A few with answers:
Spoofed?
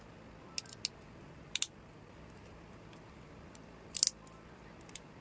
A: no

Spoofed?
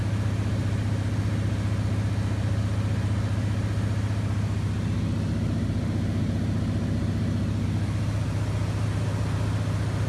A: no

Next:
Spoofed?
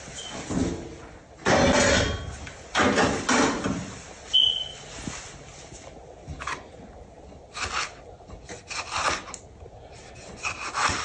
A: no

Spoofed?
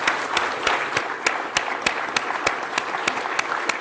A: no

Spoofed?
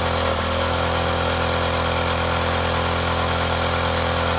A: no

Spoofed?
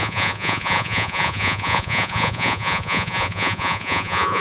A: yes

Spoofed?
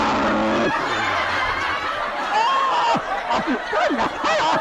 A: no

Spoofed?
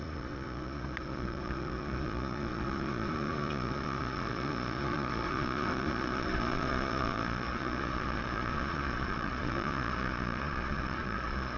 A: yes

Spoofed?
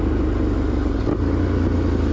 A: no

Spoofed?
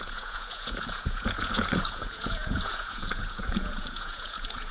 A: yes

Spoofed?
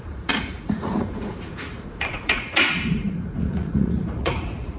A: yes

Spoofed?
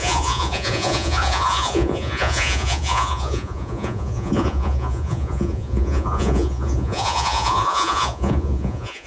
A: yes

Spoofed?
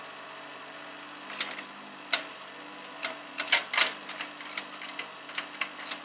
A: no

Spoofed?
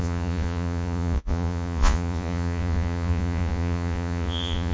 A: yes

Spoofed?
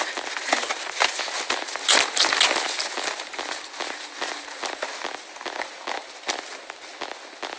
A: no